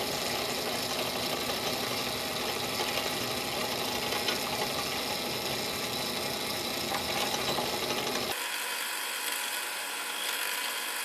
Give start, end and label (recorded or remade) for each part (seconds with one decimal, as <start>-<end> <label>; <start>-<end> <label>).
0.0-11.0 recorded